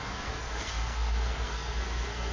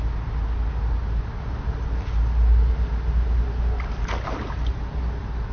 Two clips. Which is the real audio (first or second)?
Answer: second